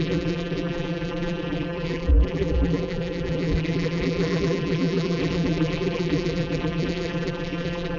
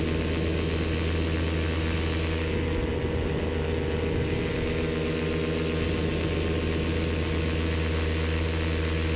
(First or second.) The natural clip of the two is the second